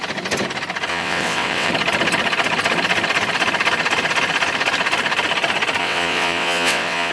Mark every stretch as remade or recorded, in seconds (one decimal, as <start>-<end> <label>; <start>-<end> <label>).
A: 0.0-0.9 recorded; 0.9-1.7 remade; 1.7-5.8 recorded; 5.8-7.1 remade